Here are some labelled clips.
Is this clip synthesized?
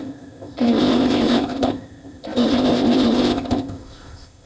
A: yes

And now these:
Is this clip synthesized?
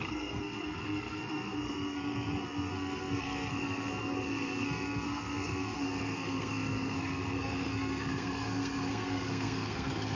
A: yes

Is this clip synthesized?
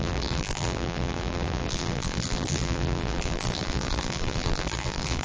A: yes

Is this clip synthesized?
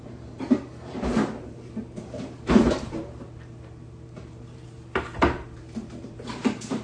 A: yes